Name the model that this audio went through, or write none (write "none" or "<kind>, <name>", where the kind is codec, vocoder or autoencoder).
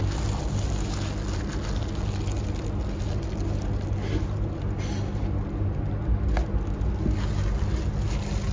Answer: none